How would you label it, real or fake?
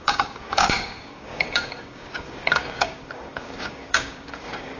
fake